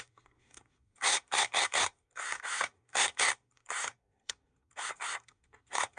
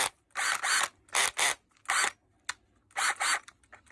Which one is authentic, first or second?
second